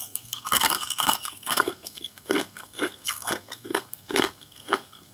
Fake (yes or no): yes